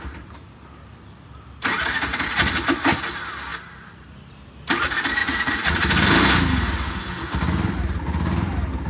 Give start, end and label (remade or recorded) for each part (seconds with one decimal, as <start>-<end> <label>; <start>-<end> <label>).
0.0-5.2 recorded; 5.2-5.8 remade; 5.8-8.9 recorded